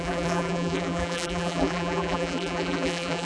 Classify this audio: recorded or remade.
remade